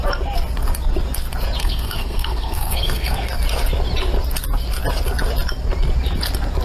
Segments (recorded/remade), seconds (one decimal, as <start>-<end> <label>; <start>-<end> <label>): 0.0-1.6 recorded; 1.6-3.3 remade; 3.3-6.6 recorded

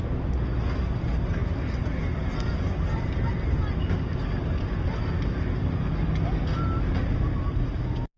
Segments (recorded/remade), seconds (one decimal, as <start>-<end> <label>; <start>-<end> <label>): 0.0-8.2 recorded

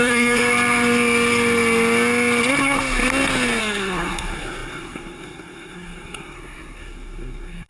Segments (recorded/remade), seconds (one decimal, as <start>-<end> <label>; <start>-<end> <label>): 0.0-0.4 remade; 0.4-3.6 recorded; 3.6-7.7 remade

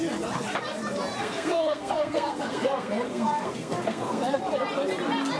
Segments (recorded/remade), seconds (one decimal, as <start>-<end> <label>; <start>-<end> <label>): 0.0-1.2 recorded; 1.2-4.4 remade; 4.4-5.4 recorded

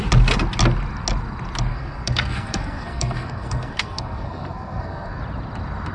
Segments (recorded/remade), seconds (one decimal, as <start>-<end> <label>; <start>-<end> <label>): 0.0-1.7 recorded; 1.7-5.2 remade; 5.2-5.9 recorded

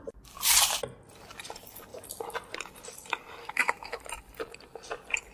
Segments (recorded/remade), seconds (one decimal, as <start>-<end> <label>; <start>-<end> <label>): 0.0-3.4 recorded; 3.4-4.0 remade; 4.0-5.3 recorded